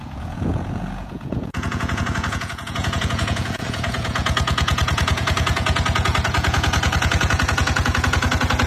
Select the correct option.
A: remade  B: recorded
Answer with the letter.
A